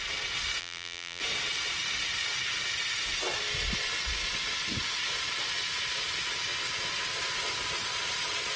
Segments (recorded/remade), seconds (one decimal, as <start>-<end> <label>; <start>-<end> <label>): 0.0-0.6 recorded; 0.6-1.2 remade; 1.2-8.6 recorded